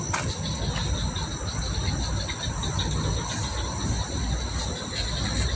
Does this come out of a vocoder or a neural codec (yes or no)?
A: no